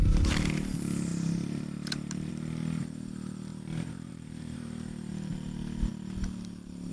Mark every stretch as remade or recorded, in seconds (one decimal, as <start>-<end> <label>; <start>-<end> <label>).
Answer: 0.0-1.1 recorded; 1.1-2.3 remade; 2.3-3.5 recorded; 3.5-5.1 remade; 5.1-6.9 recorded